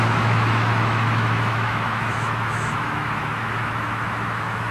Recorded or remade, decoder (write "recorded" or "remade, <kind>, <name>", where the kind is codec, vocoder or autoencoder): remade, autoencoder, DAC-VAE